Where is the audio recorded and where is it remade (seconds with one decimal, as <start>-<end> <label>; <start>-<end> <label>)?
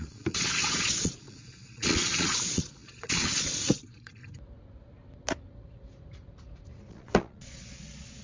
0.0-4.2 remade; 4.2-6.9 recorded; 6.9-8.2 remade